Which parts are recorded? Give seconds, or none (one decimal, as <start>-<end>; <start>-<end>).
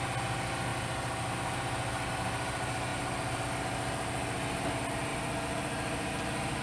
0.0-6.6